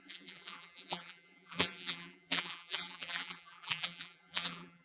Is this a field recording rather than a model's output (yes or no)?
no